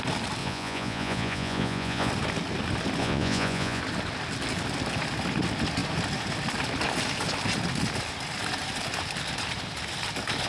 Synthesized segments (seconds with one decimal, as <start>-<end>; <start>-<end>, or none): 0.4-2.1; 3.0-3.8